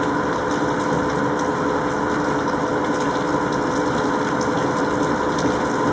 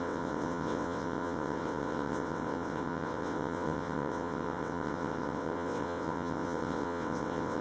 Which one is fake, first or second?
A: second